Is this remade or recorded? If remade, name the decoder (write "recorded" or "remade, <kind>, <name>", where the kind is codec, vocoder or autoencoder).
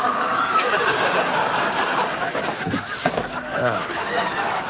remade, codec, DAC